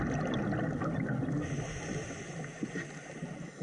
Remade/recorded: recorded